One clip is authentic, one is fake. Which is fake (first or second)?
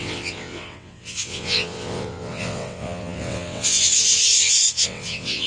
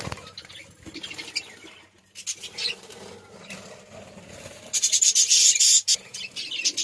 first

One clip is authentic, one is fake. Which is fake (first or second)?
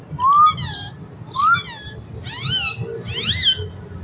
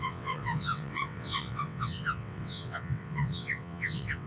second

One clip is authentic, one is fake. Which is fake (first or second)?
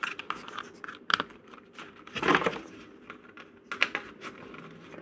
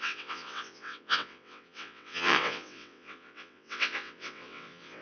second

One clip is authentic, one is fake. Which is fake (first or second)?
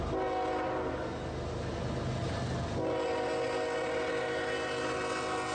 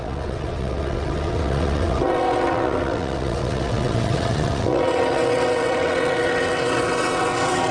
second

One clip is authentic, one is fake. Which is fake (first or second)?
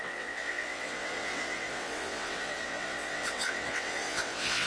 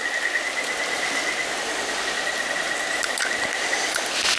first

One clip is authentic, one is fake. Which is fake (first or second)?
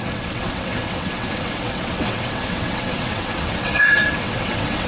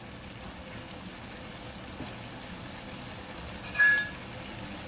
first